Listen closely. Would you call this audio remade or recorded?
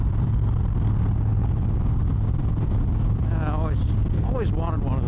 recorded